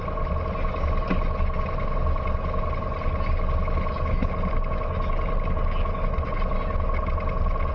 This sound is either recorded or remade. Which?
recorded